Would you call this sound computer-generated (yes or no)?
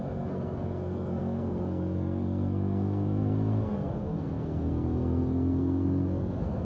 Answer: yes